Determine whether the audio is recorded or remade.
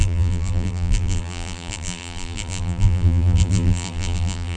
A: remade